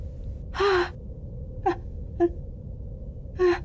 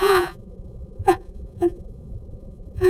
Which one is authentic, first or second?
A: first